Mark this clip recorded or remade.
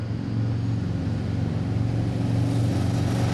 recorded